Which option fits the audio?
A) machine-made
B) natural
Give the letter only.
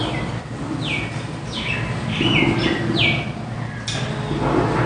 B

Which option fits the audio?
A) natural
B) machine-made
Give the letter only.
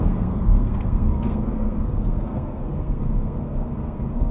B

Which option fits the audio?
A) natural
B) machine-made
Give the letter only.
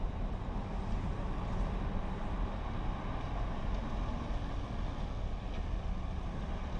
A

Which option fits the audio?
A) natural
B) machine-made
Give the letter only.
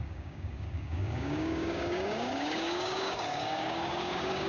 B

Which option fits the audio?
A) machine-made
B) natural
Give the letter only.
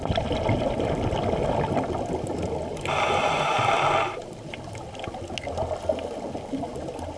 B